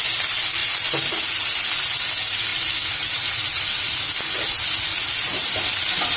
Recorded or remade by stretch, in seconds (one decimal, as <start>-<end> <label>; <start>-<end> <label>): 0.0-6.2 recorded